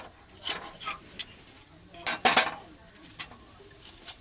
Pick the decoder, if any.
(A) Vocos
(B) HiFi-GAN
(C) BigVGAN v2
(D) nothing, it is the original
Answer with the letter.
D